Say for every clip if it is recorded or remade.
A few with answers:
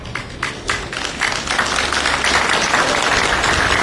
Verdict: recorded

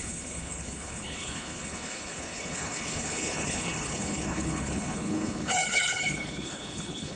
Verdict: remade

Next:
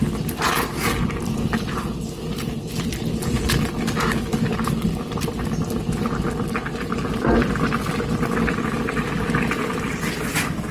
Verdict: recorded